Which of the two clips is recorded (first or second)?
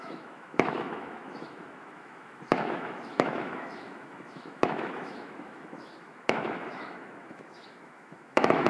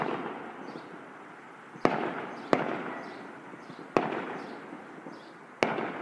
second